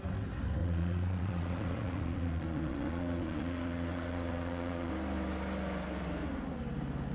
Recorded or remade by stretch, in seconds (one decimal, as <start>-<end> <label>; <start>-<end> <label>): 0.0-0.6 recorded; 0.6-4.9 remade; 4.9-7.1 recorded